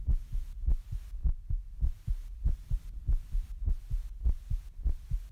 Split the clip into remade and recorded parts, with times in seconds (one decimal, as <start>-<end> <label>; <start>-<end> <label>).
0.0-2.3 recorded; 2.3-3.7 remade; 3.7-5.3 recorded